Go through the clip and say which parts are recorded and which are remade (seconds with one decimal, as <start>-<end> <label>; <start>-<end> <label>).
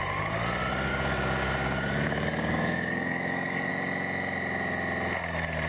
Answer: 0.0-0.9 recorded; 0.9-3.7 remade; 3.7-5.7 recorded